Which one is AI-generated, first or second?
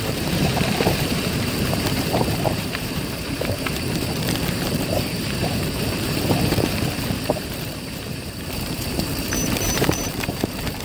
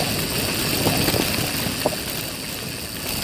first